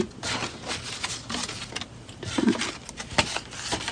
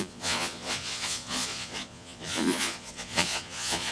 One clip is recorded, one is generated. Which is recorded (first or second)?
first